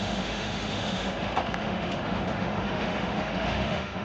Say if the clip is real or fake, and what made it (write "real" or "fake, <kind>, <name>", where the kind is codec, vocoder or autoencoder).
fake, autoencoder, DAC-VAE